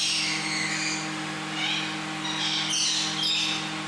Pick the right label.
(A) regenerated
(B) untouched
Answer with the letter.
B